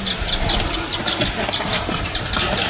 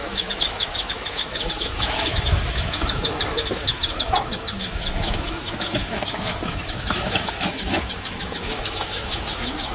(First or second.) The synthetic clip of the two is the second